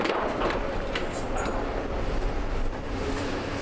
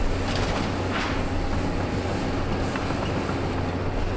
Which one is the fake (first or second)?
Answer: first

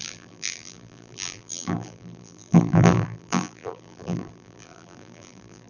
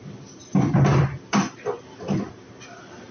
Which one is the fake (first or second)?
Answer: first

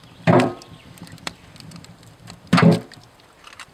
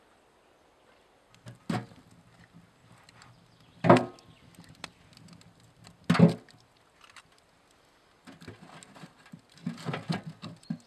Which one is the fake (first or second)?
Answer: first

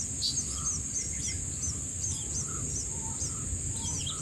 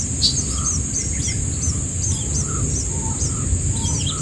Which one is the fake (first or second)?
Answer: second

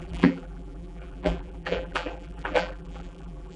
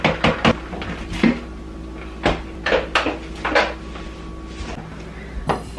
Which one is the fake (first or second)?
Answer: first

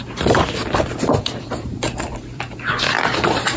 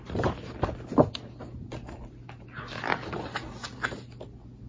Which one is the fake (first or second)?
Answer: first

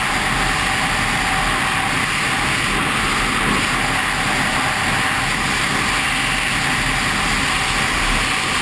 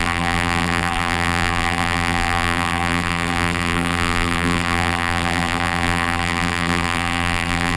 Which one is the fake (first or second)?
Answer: second